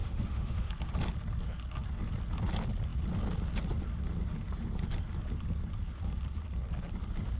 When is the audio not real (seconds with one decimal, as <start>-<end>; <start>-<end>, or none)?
0.0-0.7